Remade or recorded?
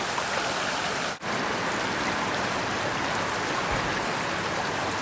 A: recorded